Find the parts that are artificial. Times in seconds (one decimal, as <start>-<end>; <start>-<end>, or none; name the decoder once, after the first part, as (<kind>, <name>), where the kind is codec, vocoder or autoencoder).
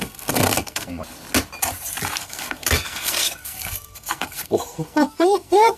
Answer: 0.0-1.0 (codec, SNAC); 2.2-5.8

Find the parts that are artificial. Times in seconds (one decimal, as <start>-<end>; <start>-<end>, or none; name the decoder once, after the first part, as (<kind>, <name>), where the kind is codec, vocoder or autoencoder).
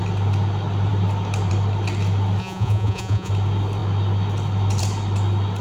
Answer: 2.4-3.3 (vocoder, Vocos)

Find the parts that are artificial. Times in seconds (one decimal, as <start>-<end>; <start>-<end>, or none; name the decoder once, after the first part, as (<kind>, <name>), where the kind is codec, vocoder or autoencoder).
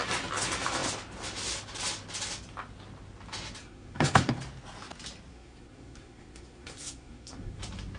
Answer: 3.6-4.3 (codec, SNAC); 5.3-7.6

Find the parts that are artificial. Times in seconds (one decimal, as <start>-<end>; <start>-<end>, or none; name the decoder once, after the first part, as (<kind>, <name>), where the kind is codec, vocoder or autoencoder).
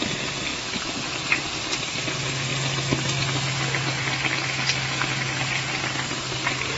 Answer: 0.5-1.0 (autoencoder, DAC-VAE)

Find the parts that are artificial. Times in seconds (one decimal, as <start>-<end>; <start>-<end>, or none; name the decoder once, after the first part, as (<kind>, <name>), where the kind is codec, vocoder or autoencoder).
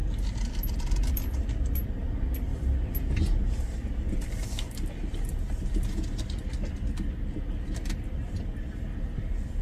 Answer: none